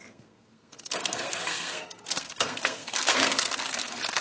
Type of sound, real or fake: fake